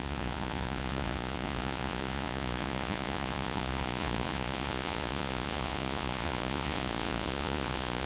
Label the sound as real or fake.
fake